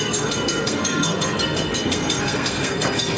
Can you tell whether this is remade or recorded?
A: remade